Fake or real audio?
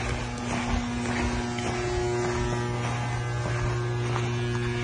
real